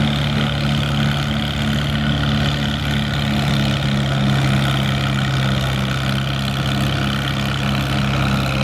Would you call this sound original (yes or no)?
yes